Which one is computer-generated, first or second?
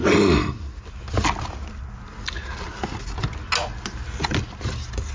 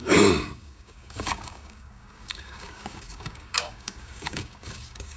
second